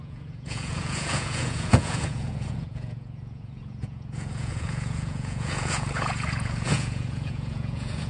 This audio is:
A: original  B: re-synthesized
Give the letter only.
B